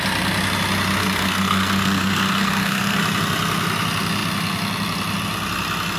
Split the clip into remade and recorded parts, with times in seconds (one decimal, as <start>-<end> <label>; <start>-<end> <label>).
0.0-1.0 recorded; 1.0-3.0 remade; 3.0-6.0 recorded